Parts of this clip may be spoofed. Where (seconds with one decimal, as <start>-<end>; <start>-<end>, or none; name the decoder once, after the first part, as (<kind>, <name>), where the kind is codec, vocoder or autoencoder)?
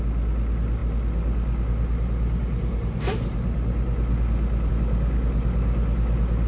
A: none